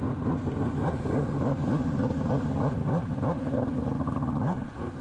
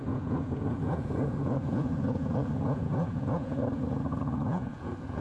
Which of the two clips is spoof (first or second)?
second